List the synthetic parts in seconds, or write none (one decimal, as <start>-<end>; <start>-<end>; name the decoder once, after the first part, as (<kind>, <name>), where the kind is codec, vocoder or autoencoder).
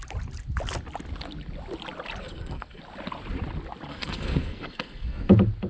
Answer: 2.2-2.8 (codec, SNAC); 3.9-5.3